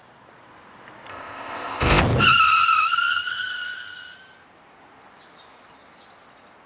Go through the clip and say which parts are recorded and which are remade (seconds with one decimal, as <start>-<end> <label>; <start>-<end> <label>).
0.0-1.1 recorded; 1.1-2.0 remade; 2.0-6.7 recorded